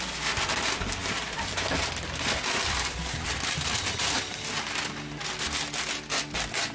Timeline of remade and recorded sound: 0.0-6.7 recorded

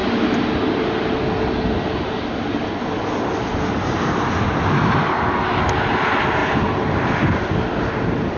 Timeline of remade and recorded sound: 0.0-8.4 recorded

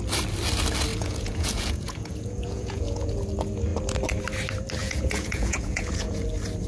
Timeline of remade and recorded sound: 0.0-0.9 recorded; 0.9-3.1 remade; 3.1-4.8 recorded; 4.8-6.2 remade; 6.2-6.7 recorded